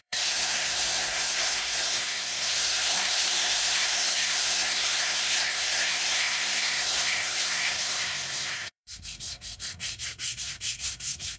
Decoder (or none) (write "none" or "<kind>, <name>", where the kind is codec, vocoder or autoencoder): codec, SNAC